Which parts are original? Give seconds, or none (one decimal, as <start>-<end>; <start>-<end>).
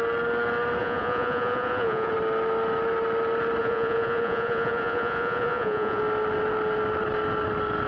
0.0-0.8; 2.1-3.6; 6.0-7.9